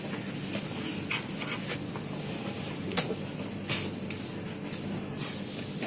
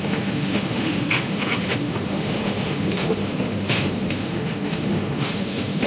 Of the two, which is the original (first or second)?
first